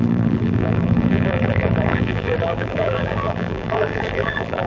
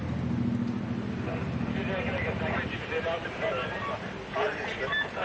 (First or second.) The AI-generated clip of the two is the first